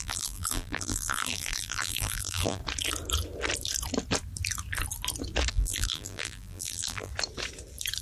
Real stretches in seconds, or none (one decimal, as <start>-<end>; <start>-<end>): 2.6-5.5; 7.1-8.0